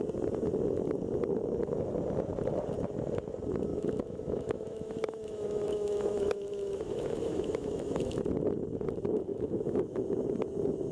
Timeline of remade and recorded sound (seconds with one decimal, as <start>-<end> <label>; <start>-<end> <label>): 0.0-3.7 recorded; 3.7-8.2 remade; 8.2-9.3 recorded; 9.3-10.0 remade; 10.0-10.9 recorded